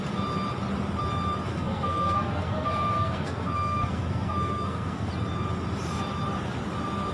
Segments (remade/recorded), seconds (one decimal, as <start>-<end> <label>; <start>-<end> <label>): 0.0-1.5 recorded; 1.5-5.1 remade; 5.1-7.1 recorded

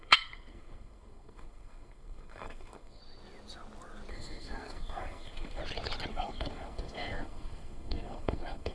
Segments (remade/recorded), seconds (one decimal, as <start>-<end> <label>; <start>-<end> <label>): 0.0-3.0 remade; 3.0-4.1 recorded; 4.1-5.6 remade; 5.6-6.1 recorded; 6.1-8.7 remade

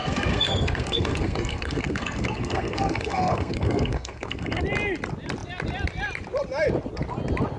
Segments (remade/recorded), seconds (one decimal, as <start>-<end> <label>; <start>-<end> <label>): 0.0-4.6 remade; 4.6-7.6 recorded